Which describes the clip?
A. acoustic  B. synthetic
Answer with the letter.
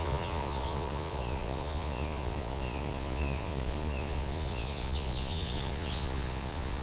B